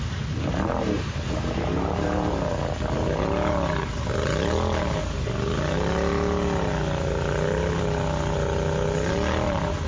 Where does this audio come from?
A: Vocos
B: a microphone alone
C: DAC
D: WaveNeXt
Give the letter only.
B